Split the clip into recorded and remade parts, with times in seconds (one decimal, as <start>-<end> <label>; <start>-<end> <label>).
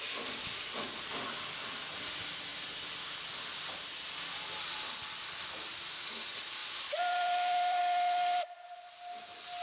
0.0-6.6 recorded; 6.6-7.8 remade; 7.8-9.6 recorded